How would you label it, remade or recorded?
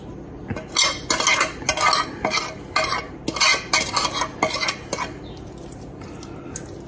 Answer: recorded